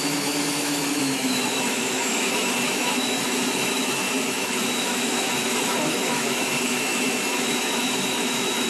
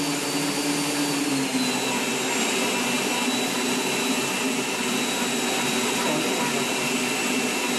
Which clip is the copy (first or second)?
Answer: first